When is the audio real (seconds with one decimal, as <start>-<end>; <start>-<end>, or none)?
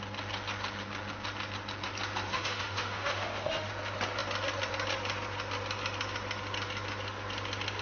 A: 0.0-2.3; 3.7-7.8